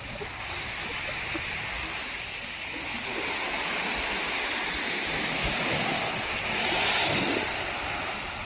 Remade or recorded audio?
recorded